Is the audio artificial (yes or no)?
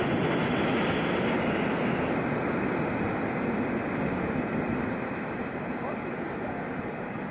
no